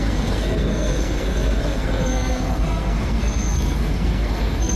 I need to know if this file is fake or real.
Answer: fake